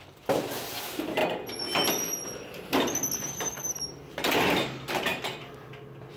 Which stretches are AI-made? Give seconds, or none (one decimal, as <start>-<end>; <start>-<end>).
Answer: none